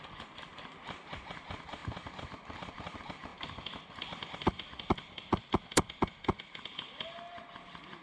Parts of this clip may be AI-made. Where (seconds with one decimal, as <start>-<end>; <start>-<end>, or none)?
none